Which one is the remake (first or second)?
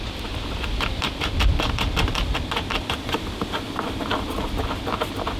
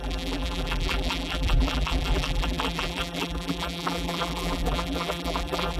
second